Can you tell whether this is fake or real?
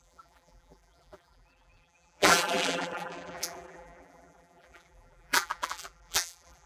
fake